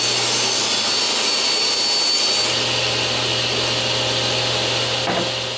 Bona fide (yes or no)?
yes